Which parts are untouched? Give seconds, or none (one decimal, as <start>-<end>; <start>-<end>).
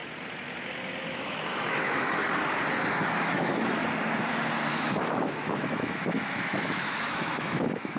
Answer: 0.0-1.1; 2.2-3.2; 3.8-4.7